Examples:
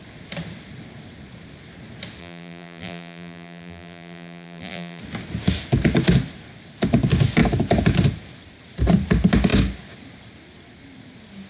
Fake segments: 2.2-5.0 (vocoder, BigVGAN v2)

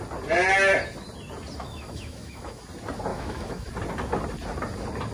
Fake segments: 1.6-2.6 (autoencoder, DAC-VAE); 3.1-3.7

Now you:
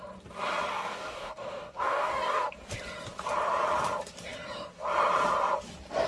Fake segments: 0.7-2.5 (codec, DAC)

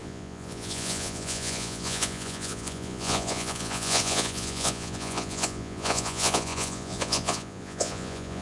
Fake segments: 0.0-8.4 (vocoder, Vocos)

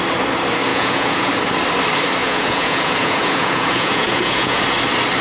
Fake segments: 0.7-1.3 (vocoder, Vocos); 2.2-4.6